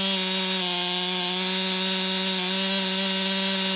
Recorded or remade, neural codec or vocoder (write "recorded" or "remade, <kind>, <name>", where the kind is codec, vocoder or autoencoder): recorded